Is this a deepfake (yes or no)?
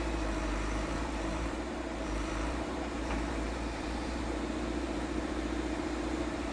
yes